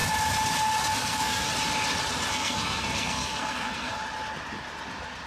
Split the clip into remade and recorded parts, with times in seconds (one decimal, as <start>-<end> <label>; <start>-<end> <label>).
0.0-0.9 recorded; 0.9-1.5 remade; 1.5-2.3 recorded; 2.3-4.0 remade; 4.0-5.3 recorded